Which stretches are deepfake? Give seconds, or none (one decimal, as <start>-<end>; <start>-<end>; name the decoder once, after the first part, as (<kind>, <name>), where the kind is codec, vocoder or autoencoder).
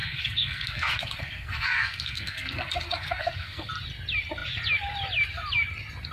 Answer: 0.0-3.7 (codec, SNAC)